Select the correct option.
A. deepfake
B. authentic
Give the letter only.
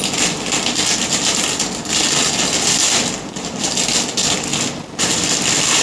B